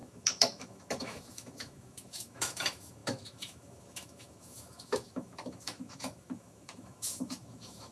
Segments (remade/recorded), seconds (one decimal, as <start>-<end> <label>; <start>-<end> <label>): 0.0-7.9 remade